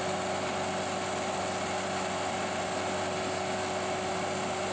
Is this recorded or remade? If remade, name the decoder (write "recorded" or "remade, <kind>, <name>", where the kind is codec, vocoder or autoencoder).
recorded